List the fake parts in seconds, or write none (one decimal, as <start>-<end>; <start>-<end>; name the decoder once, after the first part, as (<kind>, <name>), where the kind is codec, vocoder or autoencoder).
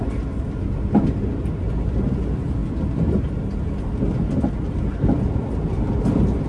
none